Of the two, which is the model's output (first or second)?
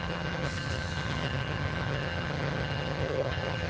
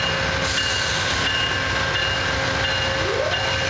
first